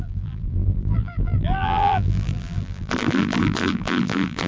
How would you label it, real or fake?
fake